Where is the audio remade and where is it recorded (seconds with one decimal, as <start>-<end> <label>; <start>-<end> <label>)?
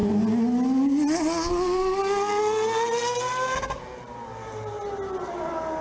0.0-5.8 recorded